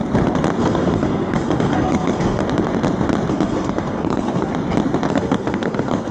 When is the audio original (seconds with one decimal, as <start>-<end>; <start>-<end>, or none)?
0.0-0.6; 2.4-3.3; 4.5-5.1